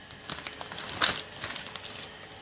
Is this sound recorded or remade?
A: recorded